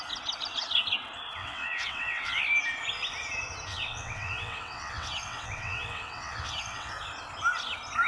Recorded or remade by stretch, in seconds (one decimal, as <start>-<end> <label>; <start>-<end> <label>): 0.0-1.4 recorded; 1.4-2.4 remade; 2.4-3.7 recorded; 3.7-6.9 remade; 6.9-8.1 recorded